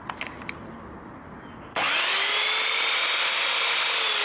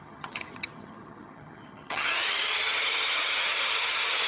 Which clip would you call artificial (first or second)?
second